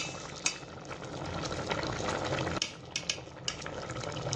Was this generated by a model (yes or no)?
no